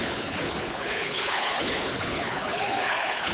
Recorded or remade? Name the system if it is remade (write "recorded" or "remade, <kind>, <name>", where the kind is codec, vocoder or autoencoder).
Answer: remade, codec, HILCodec